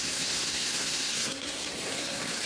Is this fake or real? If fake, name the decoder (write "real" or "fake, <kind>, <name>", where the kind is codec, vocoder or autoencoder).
fake, codec, SNAC